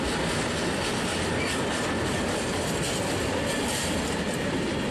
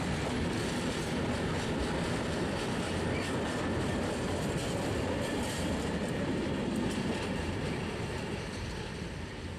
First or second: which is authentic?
first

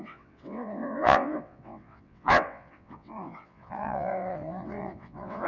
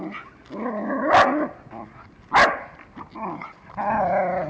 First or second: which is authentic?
second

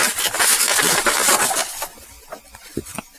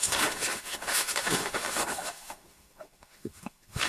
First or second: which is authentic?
first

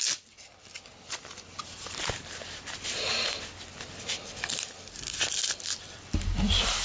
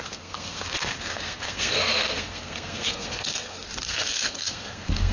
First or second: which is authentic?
first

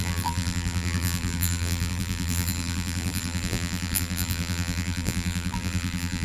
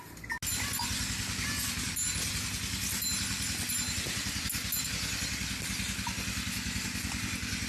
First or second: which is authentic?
second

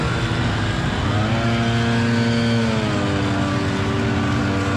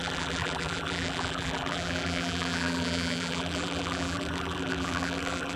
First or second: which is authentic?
first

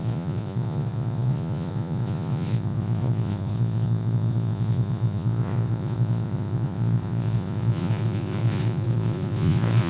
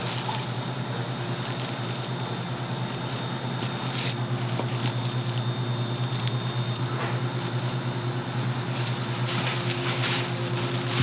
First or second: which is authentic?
second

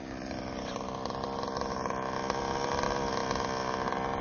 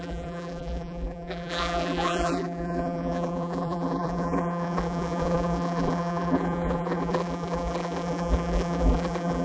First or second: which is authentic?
first